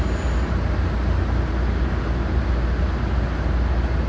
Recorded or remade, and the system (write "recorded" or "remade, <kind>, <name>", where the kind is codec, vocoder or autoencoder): recorded